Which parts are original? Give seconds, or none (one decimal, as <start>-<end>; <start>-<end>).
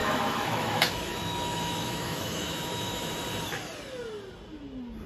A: 3.1-5.1